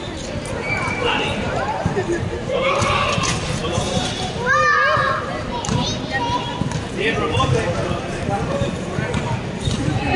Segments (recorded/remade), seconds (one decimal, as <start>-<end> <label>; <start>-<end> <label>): 0.0-1.0 recorded; 1.0-2.7 remade; 2.7-10.2 recorded